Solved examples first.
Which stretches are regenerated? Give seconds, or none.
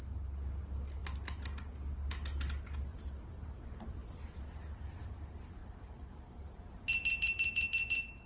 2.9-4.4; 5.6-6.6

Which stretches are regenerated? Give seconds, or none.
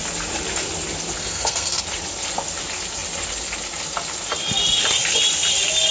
1.2-1.8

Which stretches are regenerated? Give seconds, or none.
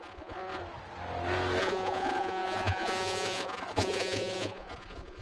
0.0-0.6; 1.6-5.2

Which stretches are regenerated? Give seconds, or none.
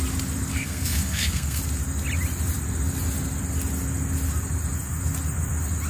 0.5-1.6